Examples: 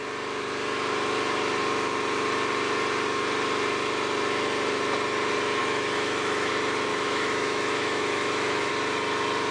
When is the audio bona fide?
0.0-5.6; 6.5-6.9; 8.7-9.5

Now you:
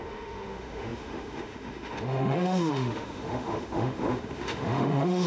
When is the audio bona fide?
none

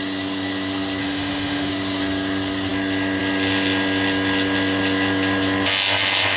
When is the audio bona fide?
0.0-1.0; 1.7-6.4